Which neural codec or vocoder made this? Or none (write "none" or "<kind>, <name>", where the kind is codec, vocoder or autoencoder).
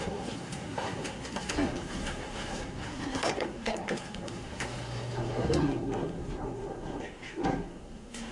codec, SNAC